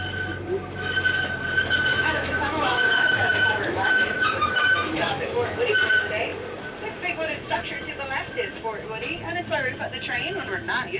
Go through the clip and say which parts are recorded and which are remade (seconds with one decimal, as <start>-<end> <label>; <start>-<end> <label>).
0.0-1.9 recorded; 1.9-5.6 remade; 5.6-11.0 recorded